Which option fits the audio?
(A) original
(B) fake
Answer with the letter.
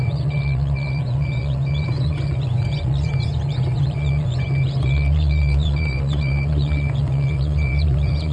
B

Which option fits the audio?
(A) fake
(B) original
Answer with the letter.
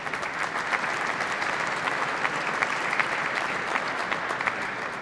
B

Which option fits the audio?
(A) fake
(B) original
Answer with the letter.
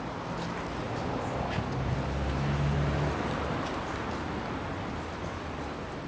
B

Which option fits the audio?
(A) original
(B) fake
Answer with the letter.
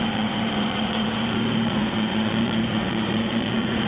B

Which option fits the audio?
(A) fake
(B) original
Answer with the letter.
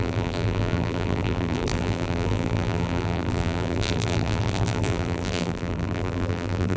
A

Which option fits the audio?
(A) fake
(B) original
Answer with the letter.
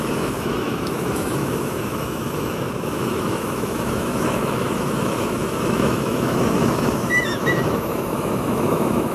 A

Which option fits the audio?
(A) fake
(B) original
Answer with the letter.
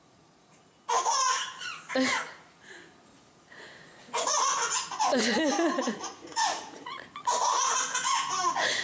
A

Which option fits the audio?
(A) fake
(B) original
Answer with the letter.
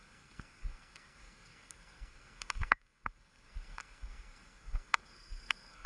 A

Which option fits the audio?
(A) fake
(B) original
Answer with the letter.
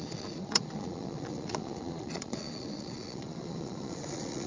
A